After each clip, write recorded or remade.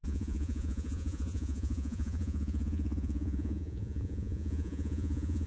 remade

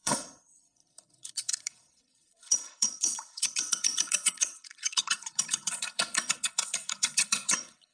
remade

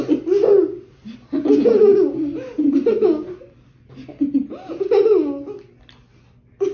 recorded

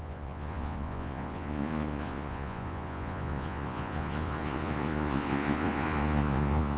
remade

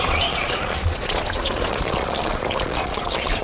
remade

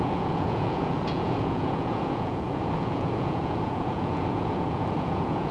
remade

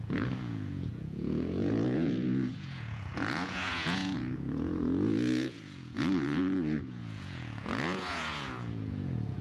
remade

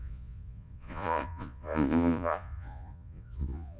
remade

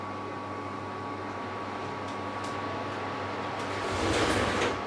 recorded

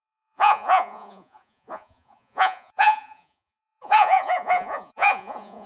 remade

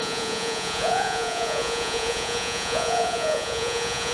remade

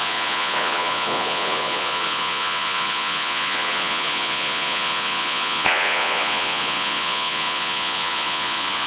remade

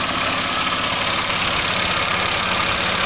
recorded